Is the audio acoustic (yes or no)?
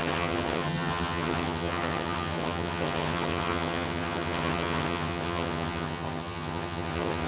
no